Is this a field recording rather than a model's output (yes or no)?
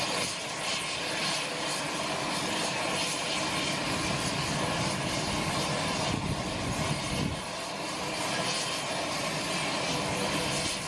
yes